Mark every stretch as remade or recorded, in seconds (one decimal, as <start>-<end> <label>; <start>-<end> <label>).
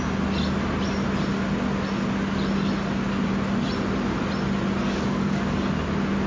0.0-4.8 recorded; 4.8-5.7 remade; 5.7-6.3 recorded